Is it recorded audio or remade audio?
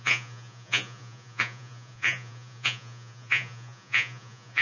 remade